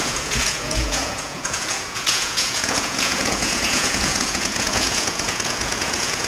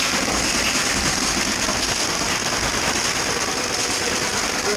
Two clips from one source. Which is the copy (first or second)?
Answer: first